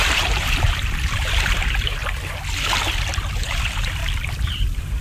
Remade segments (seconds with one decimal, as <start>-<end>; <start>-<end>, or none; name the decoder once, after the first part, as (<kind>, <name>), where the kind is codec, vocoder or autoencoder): 0.0-2.0 (vocoder, BigVGAN v2); 3.4-4.0; 4.5-5.0